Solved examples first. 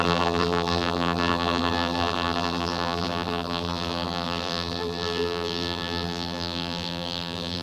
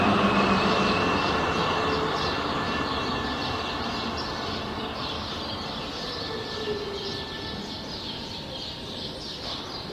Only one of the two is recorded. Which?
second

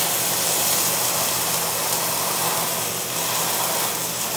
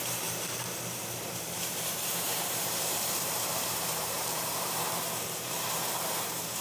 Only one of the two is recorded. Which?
first